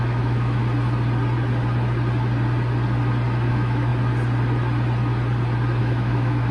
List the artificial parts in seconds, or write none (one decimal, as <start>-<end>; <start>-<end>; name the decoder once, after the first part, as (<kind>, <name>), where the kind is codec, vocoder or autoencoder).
0.0-0.6 (autoencoder, DAC-VAE); 3.5-3.9; 5.8-6.5